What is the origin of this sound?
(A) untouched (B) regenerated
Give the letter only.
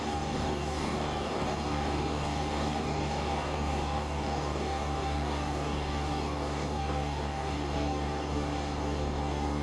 B